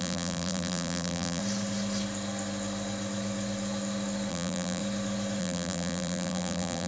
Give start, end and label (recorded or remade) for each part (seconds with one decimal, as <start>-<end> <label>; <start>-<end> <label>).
0.0-1.4 remade; 1.4-4.3 recorded; 4.3-4.8 remade; 4.8-5.4 recorded; 5.4-6.9 remade